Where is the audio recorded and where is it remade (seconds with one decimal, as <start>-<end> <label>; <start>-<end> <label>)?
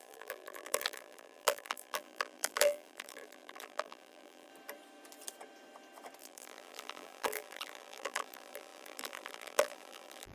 0.0-4.5 remade; 4.5-6.2 recorded; 6.2-10.3 remade